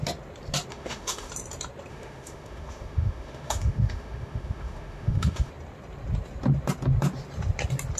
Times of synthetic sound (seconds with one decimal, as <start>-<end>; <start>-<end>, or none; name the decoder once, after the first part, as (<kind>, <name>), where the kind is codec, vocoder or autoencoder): 0.7-1.3 (autoencoder, DAC-VAE); 1.9-5.5